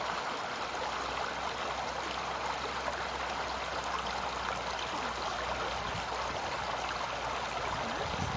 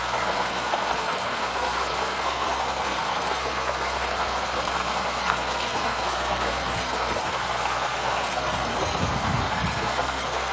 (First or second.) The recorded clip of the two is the first